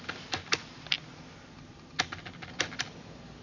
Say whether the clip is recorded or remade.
recorded